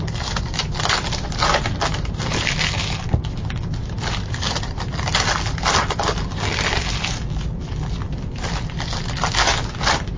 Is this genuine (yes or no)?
yes